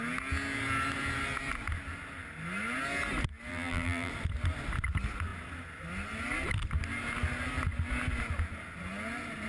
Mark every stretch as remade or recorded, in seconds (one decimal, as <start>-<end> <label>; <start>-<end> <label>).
0.0-3.5 recorded; 3.5-4.1 remade; 4.1-9.5 recorded